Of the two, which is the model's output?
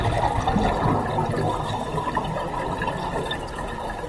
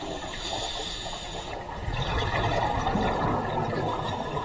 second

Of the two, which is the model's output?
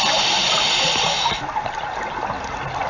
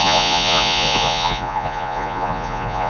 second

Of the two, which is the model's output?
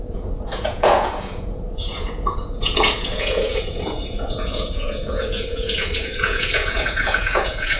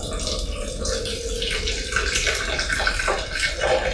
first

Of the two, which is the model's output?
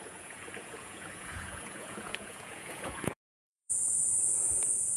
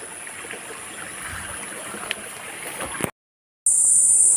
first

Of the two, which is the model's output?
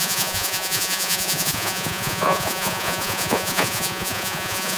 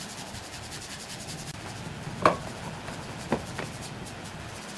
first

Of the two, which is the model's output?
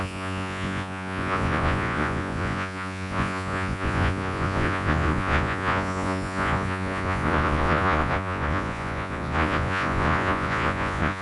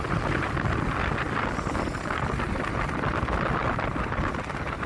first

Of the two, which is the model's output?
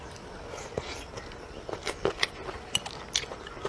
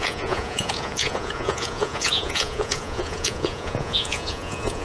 second